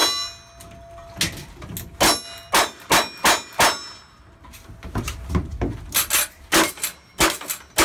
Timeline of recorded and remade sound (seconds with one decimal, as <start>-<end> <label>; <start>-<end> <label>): 0.0-7.8 recorded